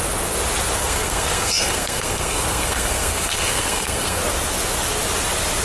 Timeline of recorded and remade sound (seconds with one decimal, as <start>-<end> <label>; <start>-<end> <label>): 0.0-0.8 recorded; 0.8-4.2 remade; 4.2-5.6 recorded